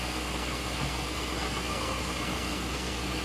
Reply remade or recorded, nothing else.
remade